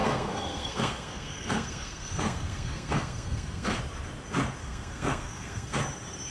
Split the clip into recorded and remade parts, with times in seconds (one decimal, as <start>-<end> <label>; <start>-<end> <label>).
0.0-3.8 remade; 3.8-4.6 recorded; 4.6-5.8 remade; 5.8-6.3 recorded